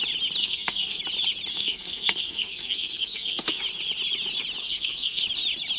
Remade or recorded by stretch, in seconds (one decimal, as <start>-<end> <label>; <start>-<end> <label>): 0.0-0.4 recorded; 0.4-1.0 remade; 1.0-1.5 recorded; 1.5-3.6 remade; 3.6-4.6 recorded; 4.6-5.2 remade; 5.2-5.8 recorded